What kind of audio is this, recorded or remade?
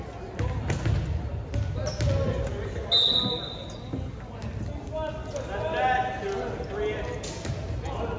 recorded